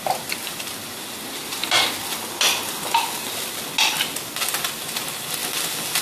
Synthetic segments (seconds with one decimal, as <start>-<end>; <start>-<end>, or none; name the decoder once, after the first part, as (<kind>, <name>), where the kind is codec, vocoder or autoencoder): none